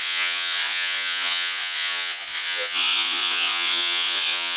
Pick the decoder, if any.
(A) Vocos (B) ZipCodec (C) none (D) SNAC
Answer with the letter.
A